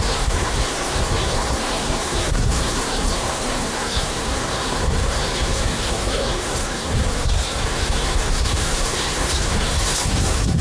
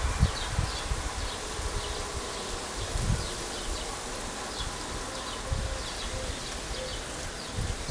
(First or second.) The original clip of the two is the second